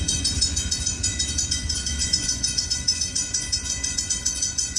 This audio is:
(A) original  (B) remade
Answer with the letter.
B